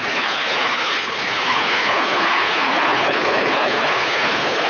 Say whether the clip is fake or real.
fake